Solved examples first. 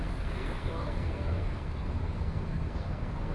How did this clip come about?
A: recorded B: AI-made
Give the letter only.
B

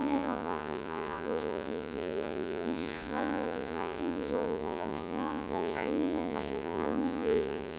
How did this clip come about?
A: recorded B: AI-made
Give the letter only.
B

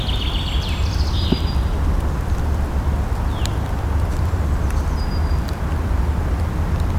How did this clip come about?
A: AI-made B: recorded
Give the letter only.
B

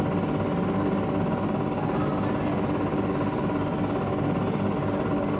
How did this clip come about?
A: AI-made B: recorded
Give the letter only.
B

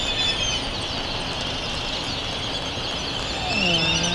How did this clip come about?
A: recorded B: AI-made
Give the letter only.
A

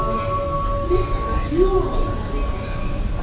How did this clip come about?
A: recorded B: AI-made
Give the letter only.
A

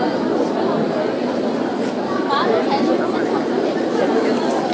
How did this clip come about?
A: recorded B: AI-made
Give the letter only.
A